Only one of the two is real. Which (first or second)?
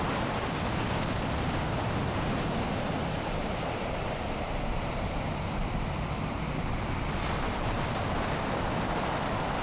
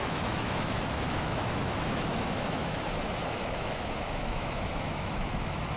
first